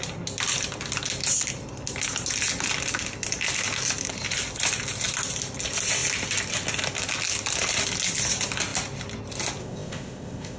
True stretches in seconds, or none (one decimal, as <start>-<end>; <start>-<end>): 0.0-9.6